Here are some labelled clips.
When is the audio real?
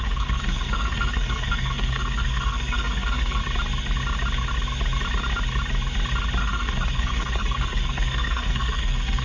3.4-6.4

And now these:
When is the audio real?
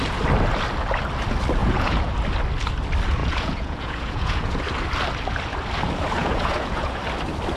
0.0-1.6; 2.1-3.2; 4.6-6.2; 7.0-7.6